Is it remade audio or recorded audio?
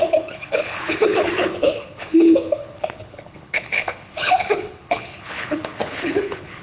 remade